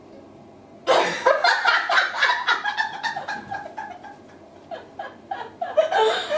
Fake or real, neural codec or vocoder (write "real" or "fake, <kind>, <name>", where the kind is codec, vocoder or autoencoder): real